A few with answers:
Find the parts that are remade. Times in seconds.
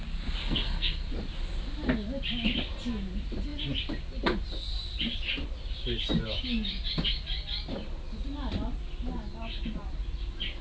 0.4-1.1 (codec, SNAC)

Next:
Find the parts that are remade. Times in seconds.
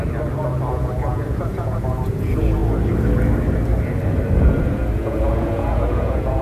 0.7-2.6 (vocoder, Vocos); 4.6-6.4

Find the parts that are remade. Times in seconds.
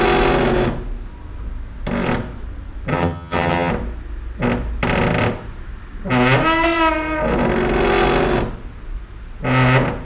2.9-3.7 (vocoder, HiFi-GAN)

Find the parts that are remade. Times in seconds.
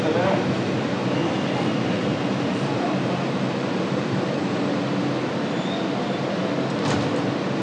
1.2-4.5 (vocoder, BigVGAN v2)